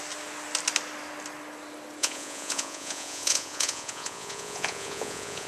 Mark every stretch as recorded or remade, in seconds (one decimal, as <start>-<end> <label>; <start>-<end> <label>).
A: 0.0-2.0 recorded; 2.0-5.5 remade